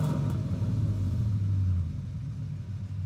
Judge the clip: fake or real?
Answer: real